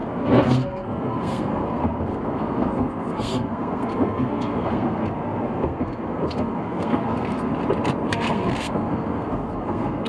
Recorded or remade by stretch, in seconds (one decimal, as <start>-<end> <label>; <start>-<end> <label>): 0.0-7.5 remade; 7.5-8.1 recorded; 8.1-10.1 remade